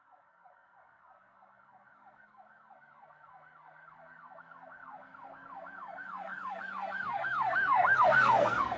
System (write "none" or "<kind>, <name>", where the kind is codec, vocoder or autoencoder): codec, SNAC